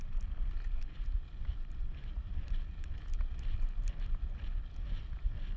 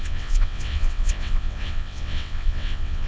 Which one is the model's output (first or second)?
second